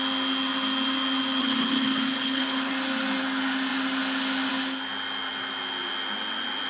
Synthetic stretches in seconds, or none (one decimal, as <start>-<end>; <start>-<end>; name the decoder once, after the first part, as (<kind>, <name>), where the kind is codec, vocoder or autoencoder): 1.4-2.7 (codec, HILCodec)